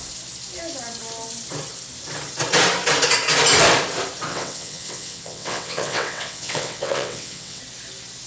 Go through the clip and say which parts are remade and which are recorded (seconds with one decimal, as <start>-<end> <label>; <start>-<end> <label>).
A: 0.0-4.3 recorded; 4.3-7.6 remade; 7.6-8.3 recorded